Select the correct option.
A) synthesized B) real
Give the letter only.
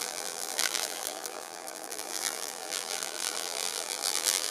A